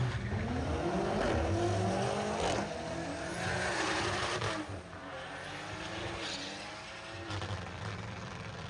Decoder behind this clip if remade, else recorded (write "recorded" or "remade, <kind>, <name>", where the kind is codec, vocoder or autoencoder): recorded